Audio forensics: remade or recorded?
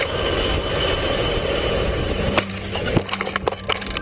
recorded